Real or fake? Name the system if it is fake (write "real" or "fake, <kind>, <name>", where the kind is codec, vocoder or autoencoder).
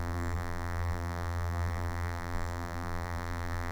fake, vocoder, BigVGAN v2